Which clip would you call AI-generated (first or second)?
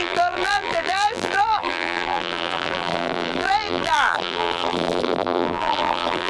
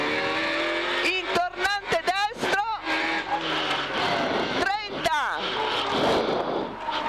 first